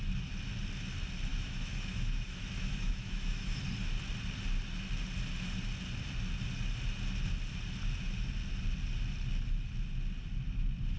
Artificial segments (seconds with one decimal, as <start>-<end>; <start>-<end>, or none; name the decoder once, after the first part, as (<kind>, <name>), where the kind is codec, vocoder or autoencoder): 1.3-3.6 (autoencoder, DAC-VAE)